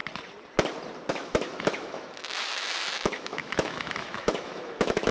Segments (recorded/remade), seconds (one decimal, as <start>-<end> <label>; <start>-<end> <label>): 0.0-1.1 recorded; 1.1-5.1 remade